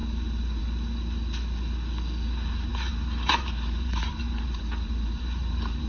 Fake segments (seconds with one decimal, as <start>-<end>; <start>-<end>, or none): 2.7-5.9